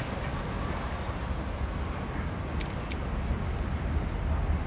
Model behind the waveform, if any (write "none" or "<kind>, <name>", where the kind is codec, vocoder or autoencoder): none